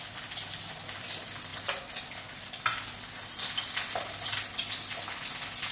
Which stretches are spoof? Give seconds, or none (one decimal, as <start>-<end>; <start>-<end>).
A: none